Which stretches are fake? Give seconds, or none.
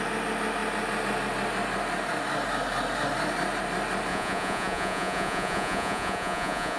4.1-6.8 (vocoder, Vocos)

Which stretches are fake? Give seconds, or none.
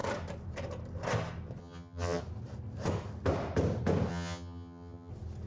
1.6-2.2 (vocoder, HiFi-GAN); 4.1-5.1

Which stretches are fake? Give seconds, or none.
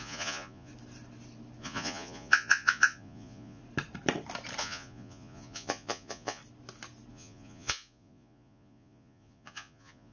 0.0-0.7 (vocoder, Vocos); 1.6-3.6; 4.6-6.4; 7.1-10.1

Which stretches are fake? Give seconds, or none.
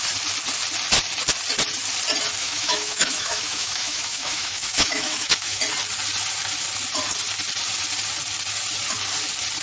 2.4-5.6 (autoencoder, DAC-VAE)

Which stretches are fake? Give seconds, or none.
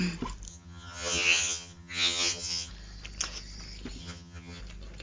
0.5-2.7 (vocoder, HiFi-GAN); 4.0-4.6